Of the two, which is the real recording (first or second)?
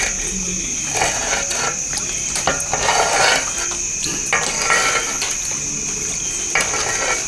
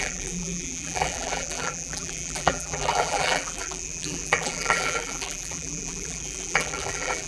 first